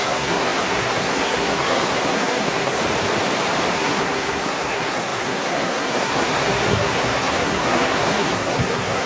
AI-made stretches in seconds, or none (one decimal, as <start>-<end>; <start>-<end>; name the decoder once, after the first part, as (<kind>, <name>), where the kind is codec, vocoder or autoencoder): 0.0-2.8 (codec, SNAC); 3.7-9.1